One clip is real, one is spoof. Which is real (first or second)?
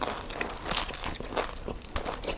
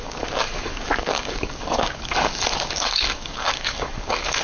first